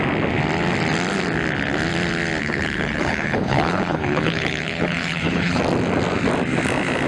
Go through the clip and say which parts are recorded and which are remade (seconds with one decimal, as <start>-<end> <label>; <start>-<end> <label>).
0.0-2.4 recorded; 2.4-5.6 remade; 5.6-7.1 recorded